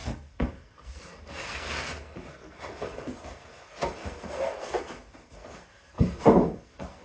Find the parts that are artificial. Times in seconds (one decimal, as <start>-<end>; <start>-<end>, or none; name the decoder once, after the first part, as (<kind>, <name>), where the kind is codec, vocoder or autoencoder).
0.0-7.0 (codec, SNAC)